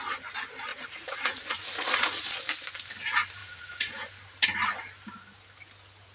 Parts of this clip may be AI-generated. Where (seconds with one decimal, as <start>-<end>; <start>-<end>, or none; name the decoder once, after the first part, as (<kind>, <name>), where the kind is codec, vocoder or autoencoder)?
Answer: 0.7-2.4 (vocoder, Vocos); 3.4-4.1